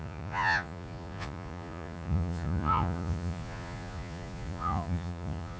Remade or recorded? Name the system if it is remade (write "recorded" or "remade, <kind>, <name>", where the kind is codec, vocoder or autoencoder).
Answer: remade, vocoder, Vocos